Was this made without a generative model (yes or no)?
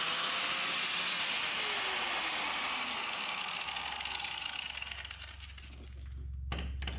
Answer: yes